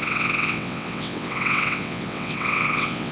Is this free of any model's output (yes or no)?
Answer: no